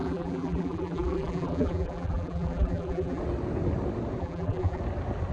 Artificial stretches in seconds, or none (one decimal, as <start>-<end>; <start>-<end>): 0.0-3.2; 4.2-4.8